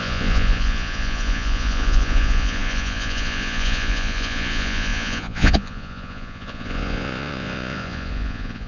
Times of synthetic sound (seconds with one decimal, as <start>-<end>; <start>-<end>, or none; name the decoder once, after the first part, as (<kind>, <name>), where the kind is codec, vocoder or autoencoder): 0.0-8.7 (vocoder, Vocos)